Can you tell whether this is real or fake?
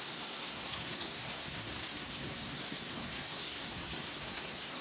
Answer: fake